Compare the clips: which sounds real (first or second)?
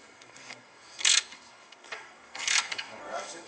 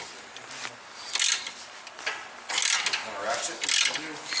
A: second